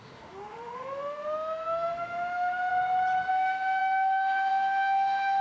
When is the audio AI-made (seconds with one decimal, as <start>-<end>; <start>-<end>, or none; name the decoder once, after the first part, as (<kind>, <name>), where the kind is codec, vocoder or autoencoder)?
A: 0.0-2.7 (autoencoder, DAC-VAE); 3.3-5.4